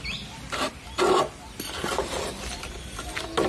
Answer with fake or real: real